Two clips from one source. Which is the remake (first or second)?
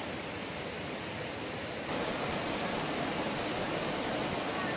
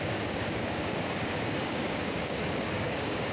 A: second